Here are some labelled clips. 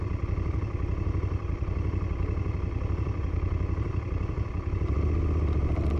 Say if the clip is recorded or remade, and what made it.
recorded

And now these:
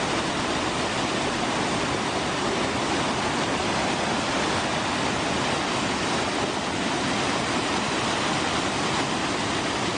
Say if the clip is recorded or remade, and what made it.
recorded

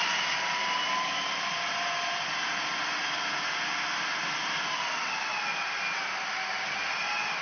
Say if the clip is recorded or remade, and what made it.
recorded